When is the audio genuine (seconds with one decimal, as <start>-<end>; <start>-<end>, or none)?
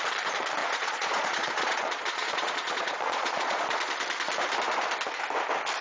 0.0-0.6; 3.6-5.8